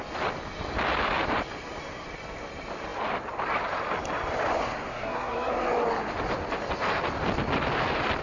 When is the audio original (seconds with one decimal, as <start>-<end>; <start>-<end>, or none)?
0.0-4.9; 5.5-8.2